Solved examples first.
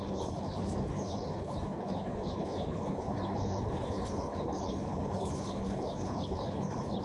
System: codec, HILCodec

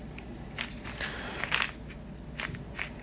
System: none